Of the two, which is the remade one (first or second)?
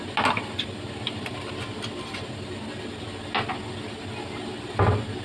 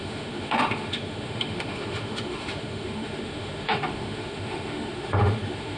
second